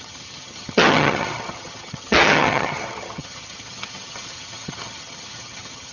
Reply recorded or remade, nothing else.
remade